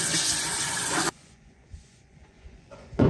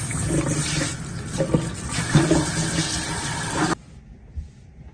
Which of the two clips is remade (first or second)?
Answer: first